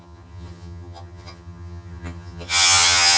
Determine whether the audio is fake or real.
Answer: fake